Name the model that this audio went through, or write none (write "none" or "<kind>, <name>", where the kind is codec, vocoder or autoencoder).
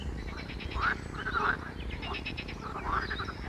none